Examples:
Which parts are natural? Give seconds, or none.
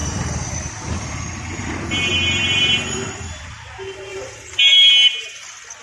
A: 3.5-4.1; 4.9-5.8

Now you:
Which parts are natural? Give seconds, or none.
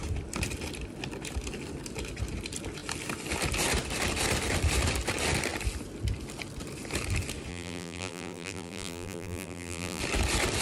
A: 0.0-7.5; 10.0-10.6